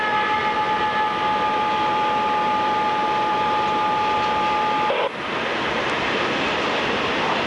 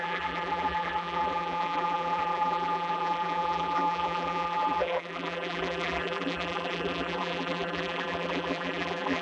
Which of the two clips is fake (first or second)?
second